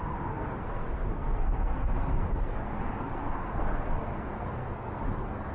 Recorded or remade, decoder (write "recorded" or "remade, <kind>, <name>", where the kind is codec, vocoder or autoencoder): remade, codec, SNAC